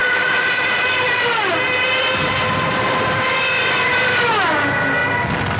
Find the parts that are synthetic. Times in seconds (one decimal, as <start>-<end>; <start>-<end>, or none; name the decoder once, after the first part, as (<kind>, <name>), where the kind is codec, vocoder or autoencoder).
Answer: 0.0-3.4 (vocoder, BigVGAN v2)